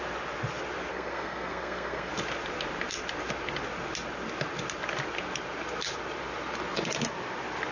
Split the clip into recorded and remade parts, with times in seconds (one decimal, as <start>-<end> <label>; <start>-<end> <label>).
0.0-0.9 recorded; 0.9-2.1 remade; 2.1-7.7 recorded